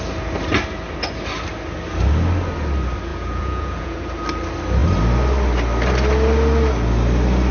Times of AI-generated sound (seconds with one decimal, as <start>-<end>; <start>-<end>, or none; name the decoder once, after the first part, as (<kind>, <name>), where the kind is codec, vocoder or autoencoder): 3.1-4.1 (vocoder, Vocos)